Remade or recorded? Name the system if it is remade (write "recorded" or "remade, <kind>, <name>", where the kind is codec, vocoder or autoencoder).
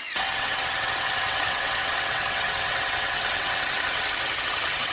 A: remade, vocoder, WaveNeXt